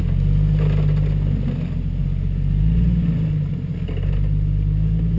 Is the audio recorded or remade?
recorded